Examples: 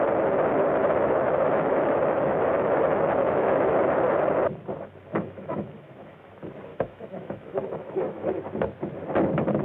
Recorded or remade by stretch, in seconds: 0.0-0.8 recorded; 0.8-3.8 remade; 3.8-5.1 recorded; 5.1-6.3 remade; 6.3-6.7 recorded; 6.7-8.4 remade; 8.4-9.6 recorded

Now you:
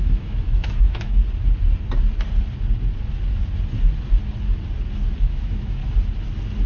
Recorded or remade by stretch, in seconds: 0.0-1.2 remade; 1.2-5.2 recorded; 5.2-5.8 remade; 5.8-6.7 recorded

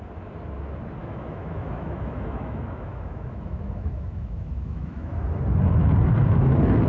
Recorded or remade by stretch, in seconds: 0.0-1.0 recorded; 1.0-5.1 remade; 5.1-6.9 recorded